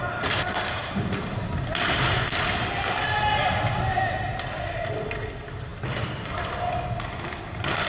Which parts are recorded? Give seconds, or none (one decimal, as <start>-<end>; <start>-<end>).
0.0-0.8; 1.5-7.9